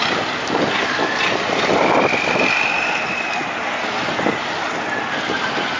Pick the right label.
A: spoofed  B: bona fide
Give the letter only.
B